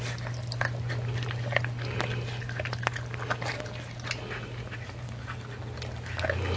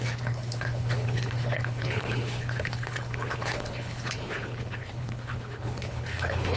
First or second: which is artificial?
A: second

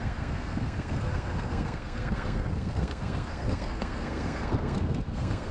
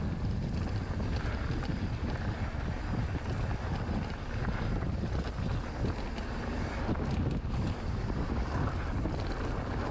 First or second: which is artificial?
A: first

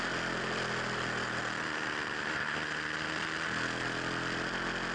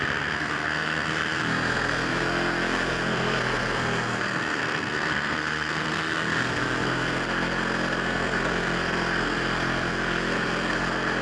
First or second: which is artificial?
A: second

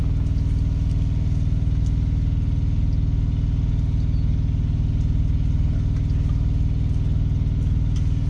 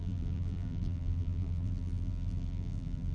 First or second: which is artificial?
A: second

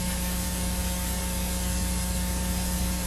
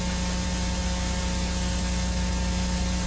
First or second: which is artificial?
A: first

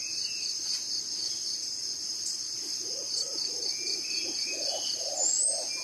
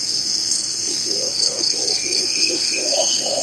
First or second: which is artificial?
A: second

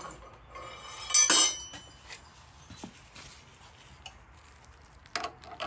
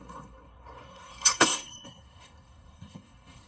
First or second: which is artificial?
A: second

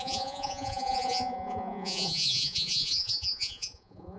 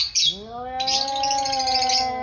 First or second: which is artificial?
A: first